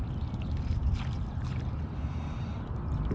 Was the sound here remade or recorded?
recorded